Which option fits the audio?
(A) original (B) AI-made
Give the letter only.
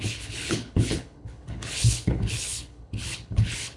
B